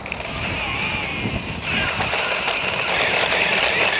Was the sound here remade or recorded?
recorded